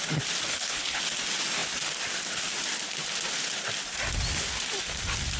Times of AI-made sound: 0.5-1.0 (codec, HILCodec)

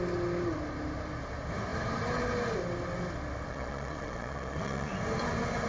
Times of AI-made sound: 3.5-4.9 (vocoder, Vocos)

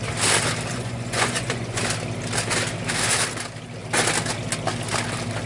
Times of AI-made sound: 0.7-1.8 (vocoder, Vocos)

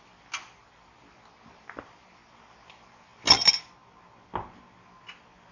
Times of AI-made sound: none